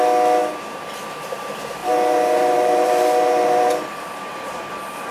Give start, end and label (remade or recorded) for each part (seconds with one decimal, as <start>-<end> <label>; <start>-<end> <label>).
0.0-1.8 recorded; 1.8-5.1 remade